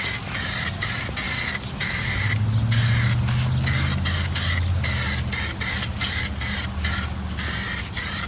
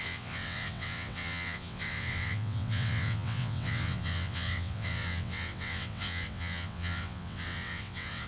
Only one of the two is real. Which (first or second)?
first